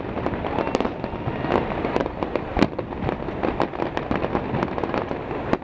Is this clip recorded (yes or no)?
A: yes